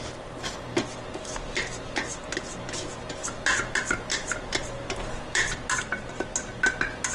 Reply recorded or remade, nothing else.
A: recorded